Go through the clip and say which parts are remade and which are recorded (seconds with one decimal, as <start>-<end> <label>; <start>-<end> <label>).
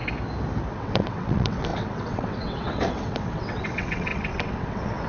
0.0-0.7 recorded; 0.7-5.1 remade